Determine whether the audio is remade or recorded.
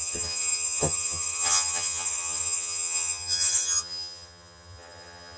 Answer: remade